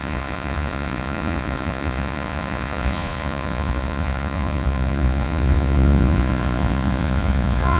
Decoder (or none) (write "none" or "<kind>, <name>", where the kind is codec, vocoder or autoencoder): vocoder, Vocos